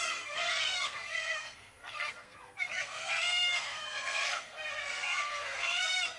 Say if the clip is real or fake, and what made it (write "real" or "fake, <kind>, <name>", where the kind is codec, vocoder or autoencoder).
fake, codec, SNAC